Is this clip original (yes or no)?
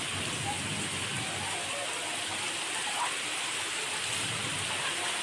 yes